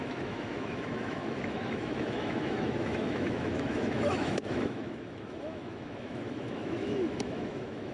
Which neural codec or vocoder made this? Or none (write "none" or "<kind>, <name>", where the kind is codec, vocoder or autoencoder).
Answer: autoencoder, DAC-VAE